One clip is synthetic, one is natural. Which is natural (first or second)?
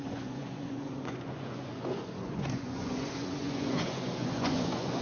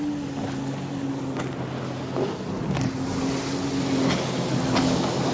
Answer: second